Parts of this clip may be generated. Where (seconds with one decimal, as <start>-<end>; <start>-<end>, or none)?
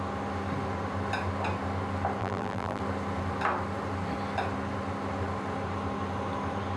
2.2-2.8